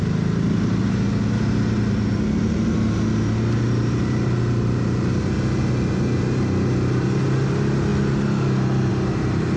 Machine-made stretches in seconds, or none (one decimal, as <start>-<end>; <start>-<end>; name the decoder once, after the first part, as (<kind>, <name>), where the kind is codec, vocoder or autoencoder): none